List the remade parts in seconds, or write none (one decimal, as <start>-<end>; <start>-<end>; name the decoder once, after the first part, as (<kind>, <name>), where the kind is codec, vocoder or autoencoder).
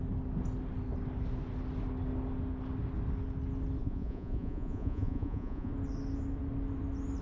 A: 3.8-5.7 (vocoder, Vocos)